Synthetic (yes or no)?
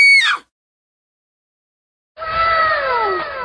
no